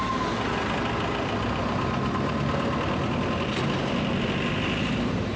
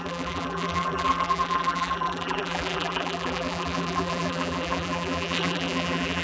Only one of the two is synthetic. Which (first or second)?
second